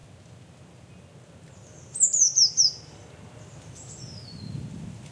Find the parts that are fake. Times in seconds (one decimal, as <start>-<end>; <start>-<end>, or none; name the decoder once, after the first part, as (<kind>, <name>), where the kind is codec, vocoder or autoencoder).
none